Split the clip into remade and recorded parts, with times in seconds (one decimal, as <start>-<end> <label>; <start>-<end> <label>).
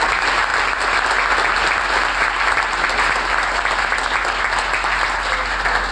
0.0-5.9 recorded